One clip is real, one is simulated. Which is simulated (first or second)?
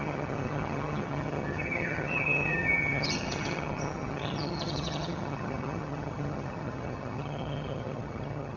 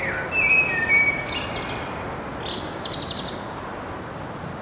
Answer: first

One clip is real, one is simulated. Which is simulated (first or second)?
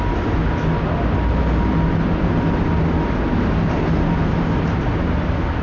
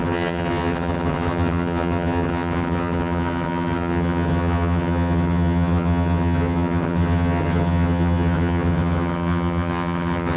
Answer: second